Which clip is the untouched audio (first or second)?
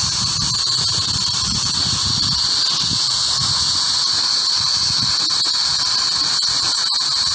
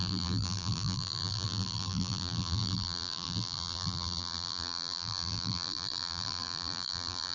first